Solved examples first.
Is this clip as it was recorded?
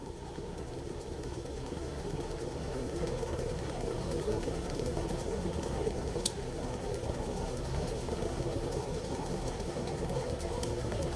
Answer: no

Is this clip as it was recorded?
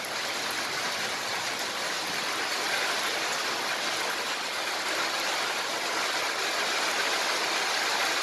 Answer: yes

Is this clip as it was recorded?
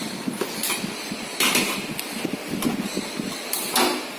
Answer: yes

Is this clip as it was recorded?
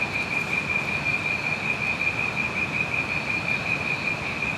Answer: yes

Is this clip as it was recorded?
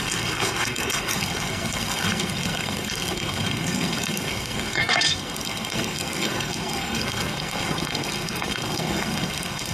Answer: no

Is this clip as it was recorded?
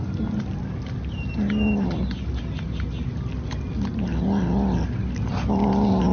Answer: yes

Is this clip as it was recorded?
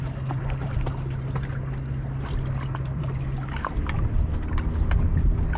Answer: yes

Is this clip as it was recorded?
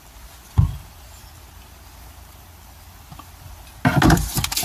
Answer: yes